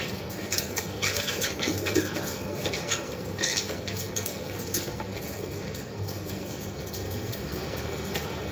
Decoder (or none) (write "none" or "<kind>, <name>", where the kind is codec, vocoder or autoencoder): codec, SNAC